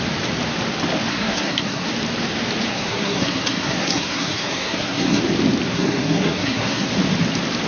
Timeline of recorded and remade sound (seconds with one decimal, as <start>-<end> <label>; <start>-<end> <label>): 0.0-1.1 recorded; 1.1-1.9 remade; 1.9-2.7 recorded; 2.7-5.2 remade; 5.2-5.7 recorded; 5.7-6.9 remade; 6.9-7.7 recorded